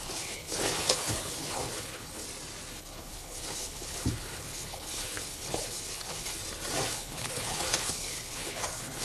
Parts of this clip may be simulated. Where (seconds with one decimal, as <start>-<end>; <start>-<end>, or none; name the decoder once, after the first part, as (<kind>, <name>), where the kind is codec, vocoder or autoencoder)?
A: 0.0-2.2 (codec, HILCodec); 2.7-6.4; 6.9-9.0